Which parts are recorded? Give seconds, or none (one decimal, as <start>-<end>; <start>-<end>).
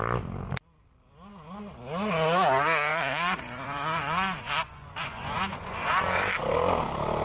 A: 0.0-2.9; 6.0-7.2